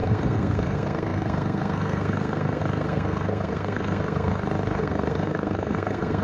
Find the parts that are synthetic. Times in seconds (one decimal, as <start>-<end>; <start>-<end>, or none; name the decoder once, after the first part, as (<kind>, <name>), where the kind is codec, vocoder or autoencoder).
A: 0.0-4.3 (codec, SNAC); 4.8-6.2